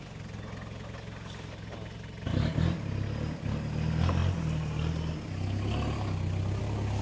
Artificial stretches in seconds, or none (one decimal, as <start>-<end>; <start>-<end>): none